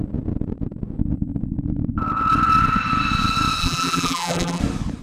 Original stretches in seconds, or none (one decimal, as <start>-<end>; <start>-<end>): 0.0-3.6; 4.6-5.0